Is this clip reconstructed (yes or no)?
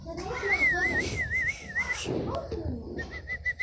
no